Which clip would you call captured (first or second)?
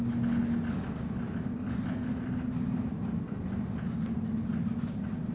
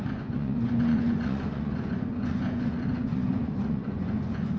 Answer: first